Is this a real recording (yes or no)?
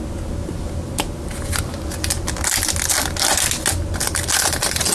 yes